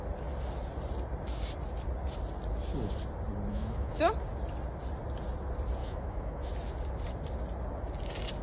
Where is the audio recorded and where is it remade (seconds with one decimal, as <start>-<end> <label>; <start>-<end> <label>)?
0.0-3.5 recorded; 3.5-4.0 remade; 4.0-5.8 recorded; 5.8-6.5 remade; 6.5-8.4 recorded